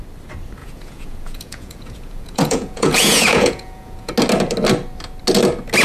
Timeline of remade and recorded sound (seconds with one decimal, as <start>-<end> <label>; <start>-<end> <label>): 0.0-0.6 recorded; 0.6-4.1 remade; 4.1-5.8 recorded